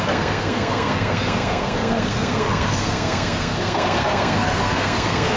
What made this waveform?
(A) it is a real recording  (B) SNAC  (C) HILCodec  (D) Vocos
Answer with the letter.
B